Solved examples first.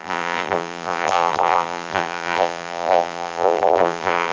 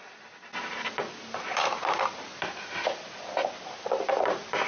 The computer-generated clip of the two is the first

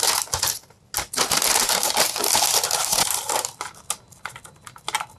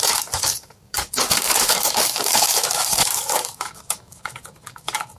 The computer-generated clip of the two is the second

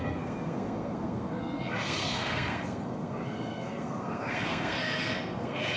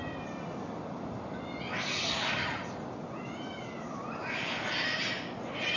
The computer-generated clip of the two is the first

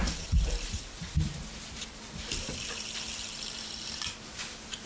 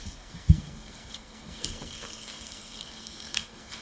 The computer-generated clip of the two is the second